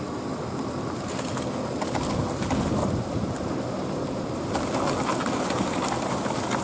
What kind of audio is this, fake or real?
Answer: real